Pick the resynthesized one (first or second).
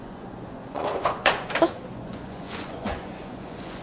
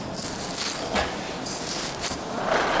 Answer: first